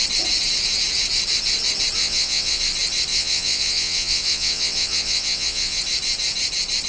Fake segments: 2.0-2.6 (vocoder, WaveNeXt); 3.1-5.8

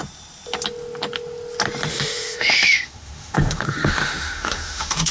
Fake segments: 1.9-5.1 (autoencoder, DAC-VAE)

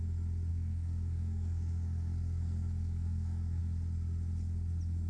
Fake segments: 0.5-3.6 (codec, SNAC)